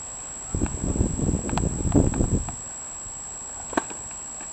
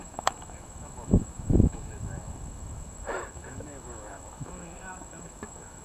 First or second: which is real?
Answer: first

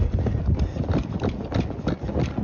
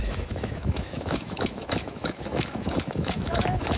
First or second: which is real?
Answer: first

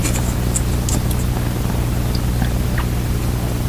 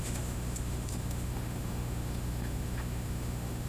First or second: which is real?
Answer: first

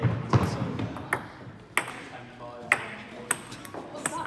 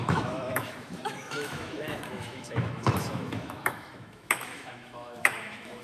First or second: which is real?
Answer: first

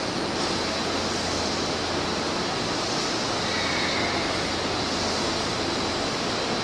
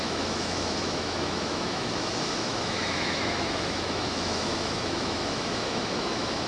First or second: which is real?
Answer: first